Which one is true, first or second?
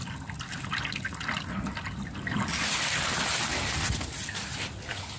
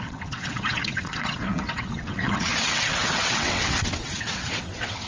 first